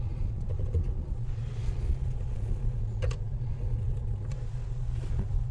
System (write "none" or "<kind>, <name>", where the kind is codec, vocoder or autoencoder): vocoder, Vocos